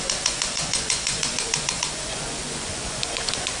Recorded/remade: remade